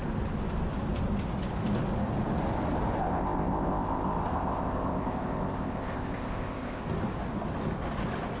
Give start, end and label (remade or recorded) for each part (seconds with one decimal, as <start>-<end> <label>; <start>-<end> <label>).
0.0-3.0 recorded; 3.0-6.8 remade; 6.8-8.4 recorded